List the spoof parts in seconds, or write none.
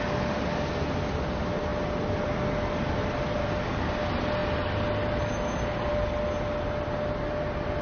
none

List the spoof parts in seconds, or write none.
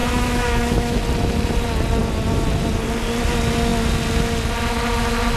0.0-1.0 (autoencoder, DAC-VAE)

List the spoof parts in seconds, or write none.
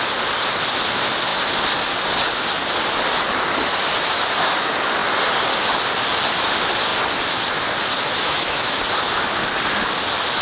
8.1-8.8 (autoencoder, DAC-VAE)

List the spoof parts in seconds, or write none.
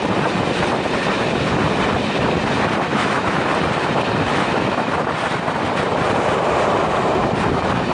2.9-3.5 (autoencoder, DAC-VAE); 4.3-4.9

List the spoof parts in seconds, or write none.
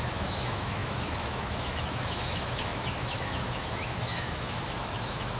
0.0-5.4 (autoencoder, DAC-VAE)